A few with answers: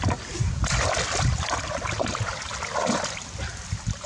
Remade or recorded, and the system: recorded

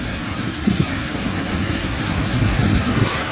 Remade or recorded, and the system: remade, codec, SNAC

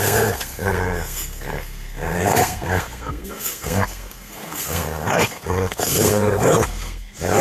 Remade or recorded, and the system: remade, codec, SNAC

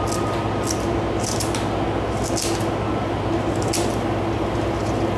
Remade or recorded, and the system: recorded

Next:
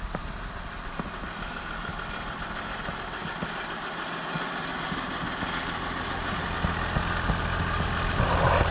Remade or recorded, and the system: recorded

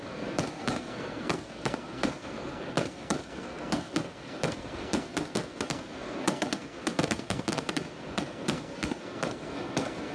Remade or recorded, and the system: remade, codec, SNAC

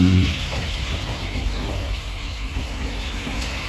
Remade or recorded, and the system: remade, codec, SNAC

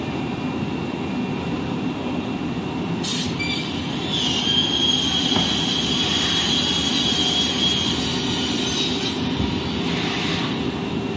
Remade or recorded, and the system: recorded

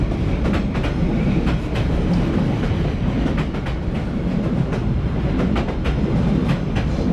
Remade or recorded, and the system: recorded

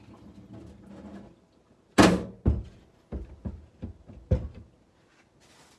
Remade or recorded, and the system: recorded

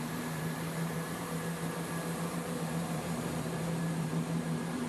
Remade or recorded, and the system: remade, vocoder, BigVGAN v2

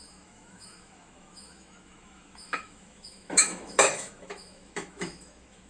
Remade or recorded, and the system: remade, autoencoder, DAC-VAE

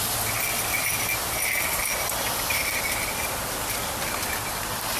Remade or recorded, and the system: recorded